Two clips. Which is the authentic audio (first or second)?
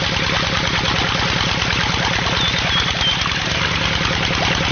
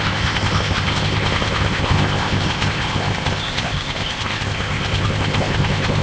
first